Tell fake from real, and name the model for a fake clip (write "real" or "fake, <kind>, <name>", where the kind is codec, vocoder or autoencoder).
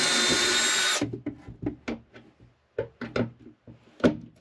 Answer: real